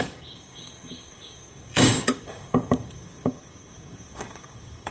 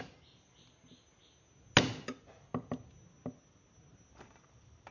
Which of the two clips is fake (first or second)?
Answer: first